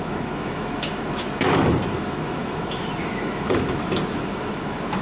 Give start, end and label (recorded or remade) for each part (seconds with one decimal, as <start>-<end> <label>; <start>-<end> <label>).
0.0-5.0 remade